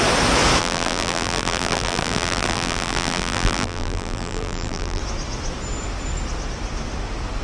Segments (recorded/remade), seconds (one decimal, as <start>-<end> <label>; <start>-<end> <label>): 0.0-0.6 recorded; 0.6-5.0 remade; 5.0-7.4 recorded